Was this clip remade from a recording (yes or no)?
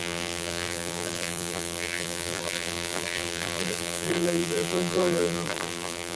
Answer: yes